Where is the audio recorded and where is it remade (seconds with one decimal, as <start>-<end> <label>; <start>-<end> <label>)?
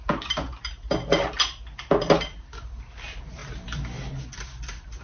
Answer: 0.0-0.7 remade; 0.7-5.0 recorded